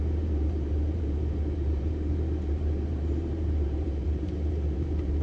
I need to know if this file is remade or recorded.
remade